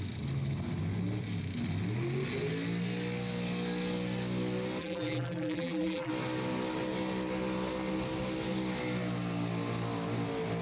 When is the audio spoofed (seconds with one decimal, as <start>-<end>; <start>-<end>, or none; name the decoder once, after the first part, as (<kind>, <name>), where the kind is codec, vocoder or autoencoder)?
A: 4.8-6.1 (vocoder, BigVGAN v2)